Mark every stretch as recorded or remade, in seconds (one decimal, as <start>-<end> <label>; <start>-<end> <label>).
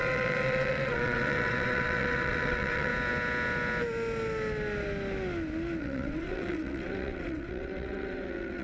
0.0-2.9 remade; 2.9-5.8 recorded; 5.8-8.6 remade